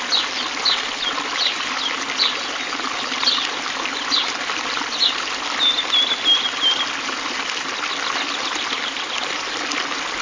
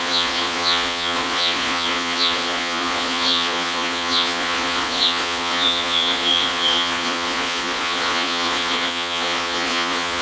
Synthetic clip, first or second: second